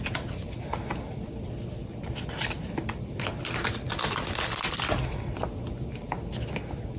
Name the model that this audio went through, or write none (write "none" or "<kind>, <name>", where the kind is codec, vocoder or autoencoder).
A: none